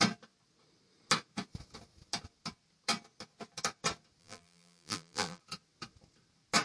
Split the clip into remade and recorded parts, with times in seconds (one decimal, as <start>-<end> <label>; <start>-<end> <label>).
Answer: 0.0-4.2 recorded; 4.2-5.4 remade; 5.4-6.6 recorded